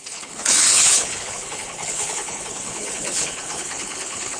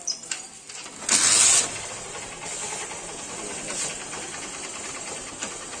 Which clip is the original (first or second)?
second